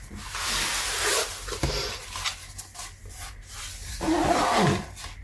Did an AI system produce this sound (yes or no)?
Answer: no